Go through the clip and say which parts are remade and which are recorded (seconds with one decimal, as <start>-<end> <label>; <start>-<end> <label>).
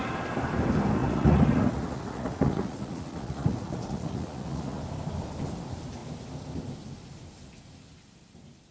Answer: 0.0-1.0 recorded; 1.0-4.8 remade; 4.8-8.7 recorded